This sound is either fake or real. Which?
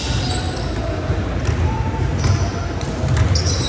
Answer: real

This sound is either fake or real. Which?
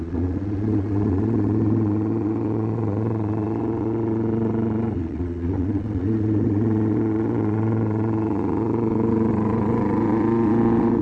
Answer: fake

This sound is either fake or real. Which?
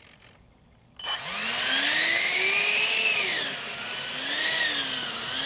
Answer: real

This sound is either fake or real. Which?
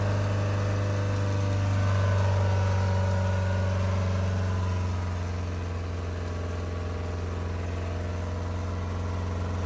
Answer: real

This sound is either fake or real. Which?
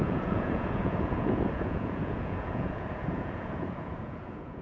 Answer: fake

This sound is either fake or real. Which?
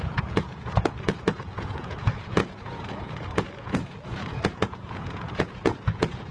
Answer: fake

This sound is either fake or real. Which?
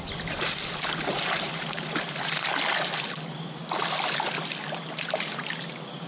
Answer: real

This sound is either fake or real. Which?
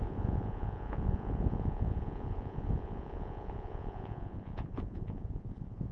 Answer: fake